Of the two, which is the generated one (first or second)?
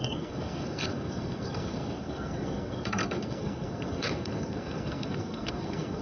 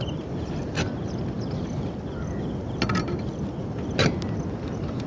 first